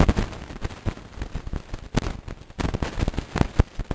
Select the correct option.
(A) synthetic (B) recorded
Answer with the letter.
B